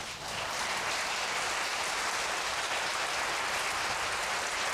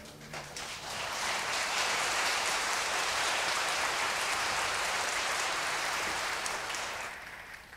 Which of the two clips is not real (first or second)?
second